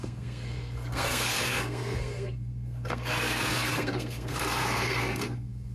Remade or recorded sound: remade